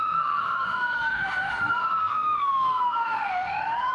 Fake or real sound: fake